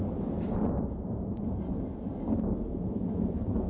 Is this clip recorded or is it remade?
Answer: recorded